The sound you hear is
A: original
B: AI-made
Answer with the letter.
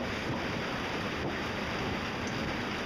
A